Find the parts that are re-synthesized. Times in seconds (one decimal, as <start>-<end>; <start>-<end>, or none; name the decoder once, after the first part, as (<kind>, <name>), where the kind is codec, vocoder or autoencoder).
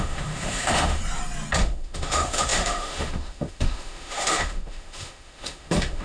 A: 0.0-1.0 (autoencoder, DAC-VAE); 1.6-6.0